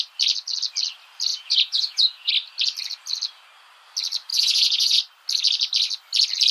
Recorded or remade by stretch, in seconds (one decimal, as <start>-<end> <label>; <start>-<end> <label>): 0.0-1.3 recorded; 1.3-2.3 remade; 2.3-4.3 recorded; 4.3-5.0 remade; 5.0-6.5 recorded